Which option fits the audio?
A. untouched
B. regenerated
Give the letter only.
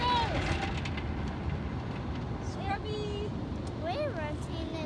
A